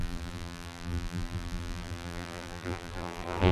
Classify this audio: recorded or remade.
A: remade